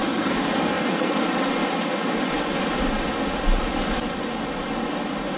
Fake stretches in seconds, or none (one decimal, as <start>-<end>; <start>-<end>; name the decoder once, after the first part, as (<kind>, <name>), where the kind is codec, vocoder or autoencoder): 0.0-1.1 (codec, SNAC)